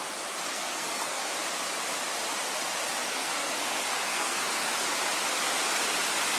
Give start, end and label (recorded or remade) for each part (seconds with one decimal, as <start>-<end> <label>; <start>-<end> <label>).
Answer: 0.0-0.5 recorded; 0.5-1.3 remade; 1.3-3.0 recorded; 3.0-4.7 remade; 4.7-6.4 recorded